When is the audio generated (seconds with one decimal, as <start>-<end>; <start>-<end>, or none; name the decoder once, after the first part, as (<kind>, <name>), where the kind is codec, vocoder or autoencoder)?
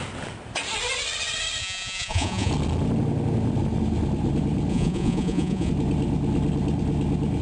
1.6-2.5 (vocoder, Vocos); 4.7-5.7